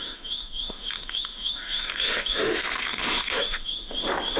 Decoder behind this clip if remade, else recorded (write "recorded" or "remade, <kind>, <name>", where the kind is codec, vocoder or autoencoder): remade, autoencoder, DAC-VAE